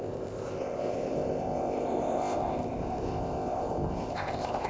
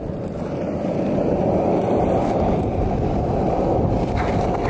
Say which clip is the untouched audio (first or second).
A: second